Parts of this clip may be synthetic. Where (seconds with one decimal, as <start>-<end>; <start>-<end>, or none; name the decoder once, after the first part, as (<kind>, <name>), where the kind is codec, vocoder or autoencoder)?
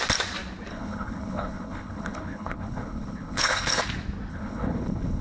0.7-3.8 (codec, HILCodec); 4.3-5.2